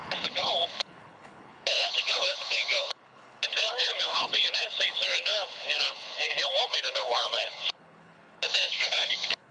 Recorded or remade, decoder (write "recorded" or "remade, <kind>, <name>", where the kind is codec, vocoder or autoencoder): remade, codec, HILCodec